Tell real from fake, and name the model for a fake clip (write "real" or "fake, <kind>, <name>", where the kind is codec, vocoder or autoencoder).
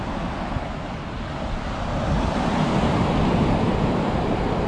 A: real